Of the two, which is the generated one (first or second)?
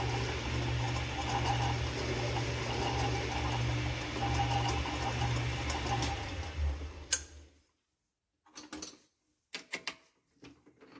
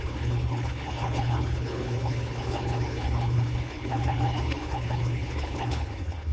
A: second